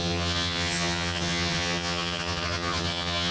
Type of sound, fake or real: fake